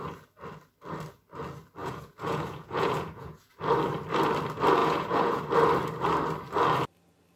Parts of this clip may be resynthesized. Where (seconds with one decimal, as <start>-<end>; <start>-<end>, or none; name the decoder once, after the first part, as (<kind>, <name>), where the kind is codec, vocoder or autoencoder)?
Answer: 1.8-3.5 (vocoder, Vocos); 4.8-5.4